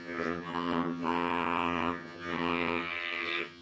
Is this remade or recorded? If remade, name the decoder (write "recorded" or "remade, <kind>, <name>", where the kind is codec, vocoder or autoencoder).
remade, vocoder, HiFi-GAN